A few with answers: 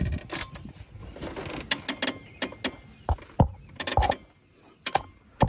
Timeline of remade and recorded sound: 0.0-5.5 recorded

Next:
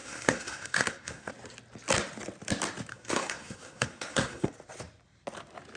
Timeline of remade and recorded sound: 0.0-1.3 remade; 1.3-2.9 recorded; 2.9-4.5 remade; 4.5-5.8 recorded

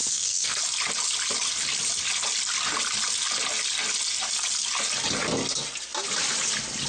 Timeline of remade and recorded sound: 0.0-0.6 remade; 0.6-6.9 recorded

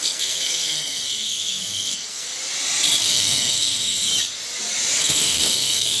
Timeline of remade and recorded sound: 0.0-2.3 remade; 2.3-3.0 recorded; 3.0-4.1 remade; 4.1-5.0 recorded; 5.0-6.0 remade

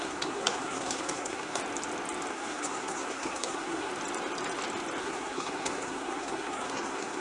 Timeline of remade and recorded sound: 0.0-1.6 remade; 1.6-2.3 recorded; 2.3-3.9 remade; 3.9-5.0 recorded; 5.0-7.2 remade

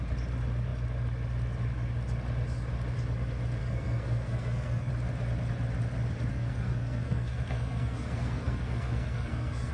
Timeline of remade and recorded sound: 0.0-3.6 recorded; 3.6-4.9 remade; 4.9-6.3 recorded; 6.3-9.7 remade

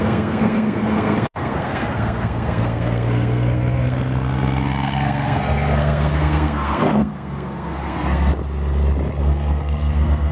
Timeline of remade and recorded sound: 0.0-8.3 remade; 8.3-9.2 recorded; 9.2-10.3 remade

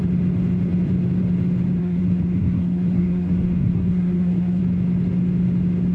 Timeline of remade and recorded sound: 0.0-1.8 recorded; 1.8-4.6 remade; 4.6-5.9 recorded